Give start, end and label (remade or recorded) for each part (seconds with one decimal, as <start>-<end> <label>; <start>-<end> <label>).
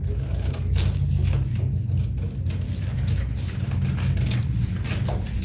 0.0-5.4 recorded